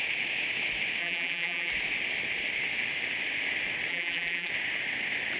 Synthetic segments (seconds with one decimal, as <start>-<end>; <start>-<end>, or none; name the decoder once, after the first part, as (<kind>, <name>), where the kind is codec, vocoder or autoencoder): 1.0-1.7 (vocoder, BigVGAN v2); 3.9-4.5